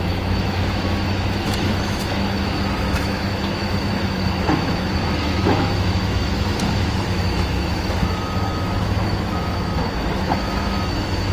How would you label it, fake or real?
fake